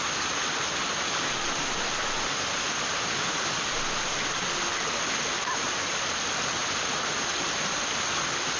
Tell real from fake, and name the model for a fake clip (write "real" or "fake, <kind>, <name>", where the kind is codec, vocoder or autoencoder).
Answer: real